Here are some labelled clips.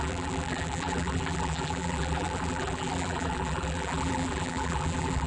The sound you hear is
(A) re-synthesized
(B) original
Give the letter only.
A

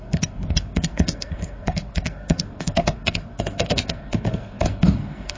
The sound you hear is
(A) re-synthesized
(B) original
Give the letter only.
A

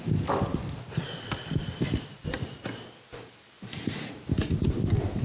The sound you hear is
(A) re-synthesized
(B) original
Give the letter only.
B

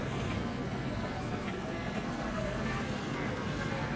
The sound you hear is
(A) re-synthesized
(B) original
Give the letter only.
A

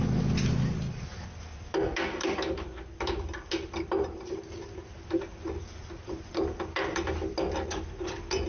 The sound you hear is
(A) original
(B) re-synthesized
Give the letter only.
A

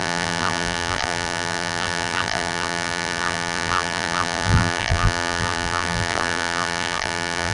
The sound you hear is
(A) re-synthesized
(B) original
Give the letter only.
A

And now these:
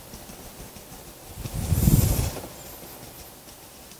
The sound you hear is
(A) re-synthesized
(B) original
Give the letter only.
B